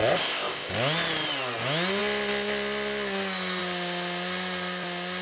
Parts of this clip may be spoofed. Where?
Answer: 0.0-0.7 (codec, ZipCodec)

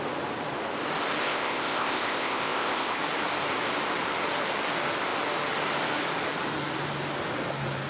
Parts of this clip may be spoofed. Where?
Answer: 1.2-3.0 (codec, ZipCodec)

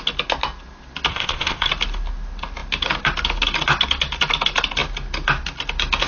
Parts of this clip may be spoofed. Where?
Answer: 1.1-1.7 (codec, ZipCodec)